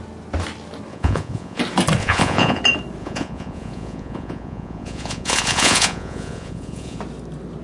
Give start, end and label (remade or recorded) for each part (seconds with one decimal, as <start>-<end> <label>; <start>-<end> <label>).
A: 0.0-0.9 recorded; 0.9-1.6 remade; 1.6-2.0 recorded; 2.0-2.6 remade; 2.6-3.0 recorded; 3.0-7.0 remade; 7.0-7.6 recorded